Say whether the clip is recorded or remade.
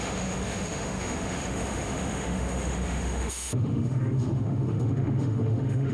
remade